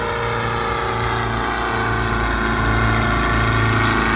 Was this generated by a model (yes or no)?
no